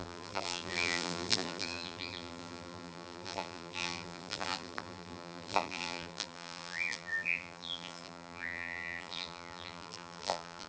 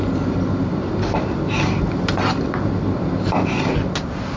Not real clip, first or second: first